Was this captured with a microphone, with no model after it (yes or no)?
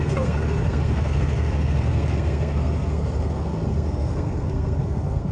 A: no